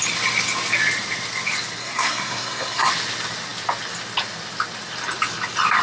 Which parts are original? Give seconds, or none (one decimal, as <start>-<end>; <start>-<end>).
0.0-1.8; 2.9-5.8